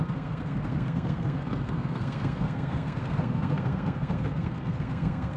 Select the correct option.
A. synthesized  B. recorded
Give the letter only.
A